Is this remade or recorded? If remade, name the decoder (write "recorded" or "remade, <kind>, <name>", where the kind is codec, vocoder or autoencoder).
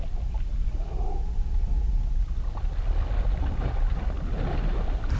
recorded